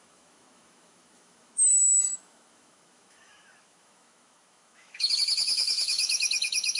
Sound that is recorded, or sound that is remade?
remade